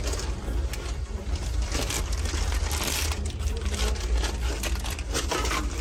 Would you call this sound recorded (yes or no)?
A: yes